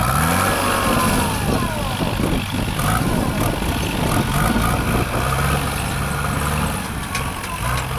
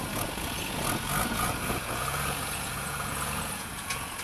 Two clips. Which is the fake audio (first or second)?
second